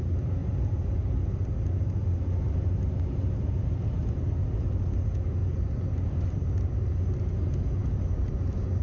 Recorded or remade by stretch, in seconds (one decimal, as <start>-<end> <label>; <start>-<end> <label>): 0.0-0.4 recorded; 0.4-4.2 remade; 4.2-5.4 recorded; 5.4-7.1 remade; 7.1-7.8 recorded; 7.8-8.3 remade; 8.3-8.8 recorded